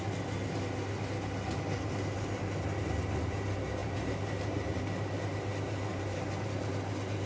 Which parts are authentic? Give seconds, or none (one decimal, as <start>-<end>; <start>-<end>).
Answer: 0.0-3.8; 4.8-5.9; 6.7-7.3